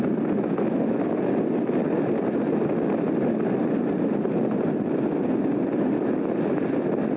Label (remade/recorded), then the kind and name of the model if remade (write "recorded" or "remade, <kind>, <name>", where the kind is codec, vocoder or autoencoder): recorded